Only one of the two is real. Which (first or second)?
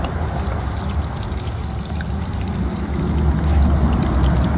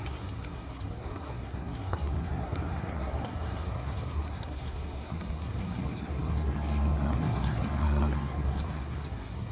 first